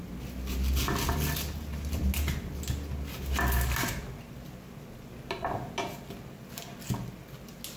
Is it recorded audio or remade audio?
recorded